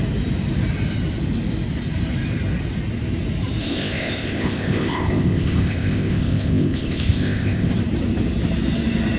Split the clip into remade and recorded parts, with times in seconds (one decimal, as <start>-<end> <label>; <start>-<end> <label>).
0.0-3.6 recorded; 3.6-7.7 remade; 7.7-9.2 recorded